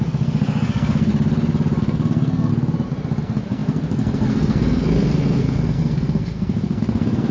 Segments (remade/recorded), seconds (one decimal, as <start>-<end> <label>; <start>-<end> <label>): 0.0-1.1 remade; 1.1-1.8 recorded; 1.8-2.5 remade; 2.5-3.2 recorded; 3.2-7.3 remade